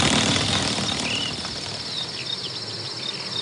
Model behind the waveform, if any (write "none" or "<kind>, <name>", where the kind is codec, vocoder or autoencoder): none